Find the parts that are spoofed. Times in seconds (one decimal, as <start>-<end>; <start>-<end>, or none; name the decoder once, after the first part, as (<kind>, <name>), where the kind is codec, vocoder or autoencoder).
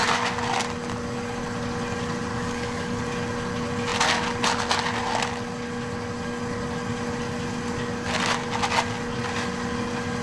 2.3-3.0 (codec, DAC)